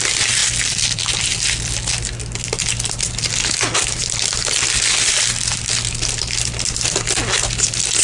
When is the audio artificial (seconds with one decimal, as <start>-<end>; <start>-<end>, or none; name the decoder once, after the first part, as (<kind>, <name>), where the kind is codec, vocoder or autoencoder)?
none